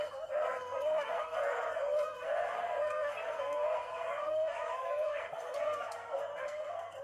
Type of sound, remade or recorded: remade